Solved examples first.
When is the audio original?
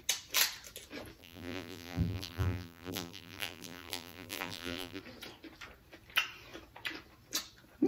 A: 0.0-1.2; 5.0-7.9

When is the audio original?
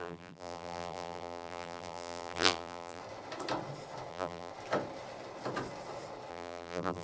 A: 3.0-4.1; 4.5-6.3